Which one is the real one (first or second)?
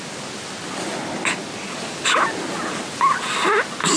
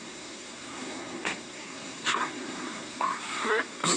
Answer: first